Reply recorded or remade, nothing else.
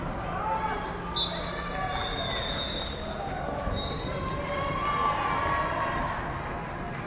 recorded